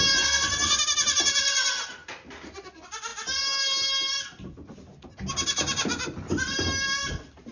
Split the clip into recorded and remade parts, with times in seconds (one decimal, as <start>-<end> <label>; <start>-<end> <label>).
0.0-7.5 recorded